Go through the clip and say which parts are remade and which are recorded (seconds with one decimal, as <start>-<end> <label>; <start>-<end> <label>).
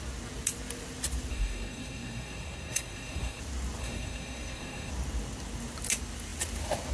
0.0-1.3 recorded; 1.3-3.4 remade; 3.4-3.8 recorded; 3.8-4.9 remade; 4.9-6.9 recorded